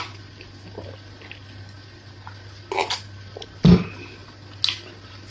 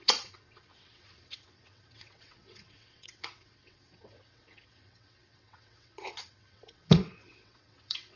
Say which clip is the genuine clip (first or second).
first